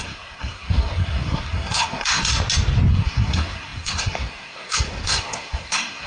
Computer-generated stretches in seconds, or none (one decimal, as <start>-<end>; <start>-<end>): 0.0-2.3; 2.9-6.1